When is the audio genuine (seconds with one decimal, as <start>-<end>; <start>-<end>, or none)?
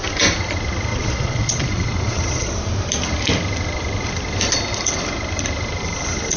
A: 0.0-0.9; 2.5-6.4